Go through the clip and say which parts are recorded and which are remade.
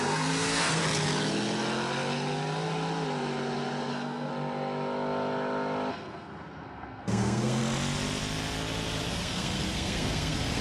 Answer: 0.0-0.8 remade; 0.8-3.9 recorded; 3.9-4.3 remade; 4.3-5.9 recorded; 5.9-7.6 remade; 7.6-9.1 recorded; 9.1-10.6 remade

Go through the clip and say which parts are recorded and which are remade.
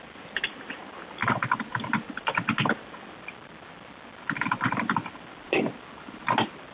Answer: 0.0-6.7 recorded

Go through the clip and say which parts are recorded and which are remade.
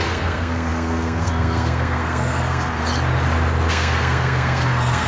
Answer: 0.0-2.8 remade; 2.8-3.7 recorded; 3.7-5.1 remade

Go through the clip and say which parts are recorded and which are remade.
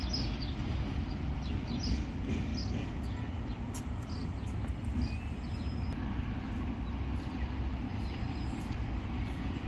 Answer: 0.0-9.7 recorded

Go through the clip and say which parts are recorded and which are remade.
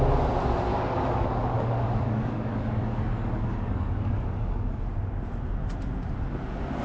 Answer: 0.0-0.7 recorded; 0.7-4.8 remade; 4.8-6.8 recorded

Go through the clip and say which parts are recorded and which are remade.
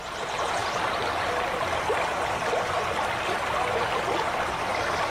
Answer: 0.0-5.1 recorded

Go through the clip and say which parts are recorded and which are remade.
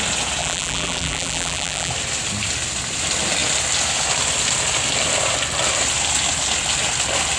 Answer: 0.0-0.4 recorded; 0.4-1.9 remade; 1.9-7.4 recorded